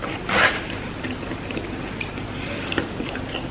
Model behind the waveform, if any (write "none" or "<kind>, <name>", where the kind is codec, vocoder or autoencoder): none